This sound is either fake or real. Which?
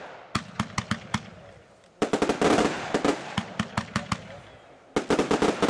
real